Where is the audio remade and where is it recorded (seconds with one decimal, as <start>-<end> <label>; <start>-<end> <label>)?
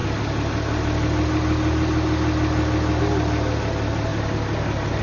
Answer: 0.0-5.0 recorded